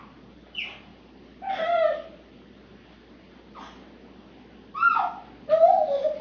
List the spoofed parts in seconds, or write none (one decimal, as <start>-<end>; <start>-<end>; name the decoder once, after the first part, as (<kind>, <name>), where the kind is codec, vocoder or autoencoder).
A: none